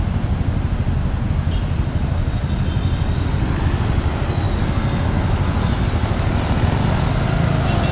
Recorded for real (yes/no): yes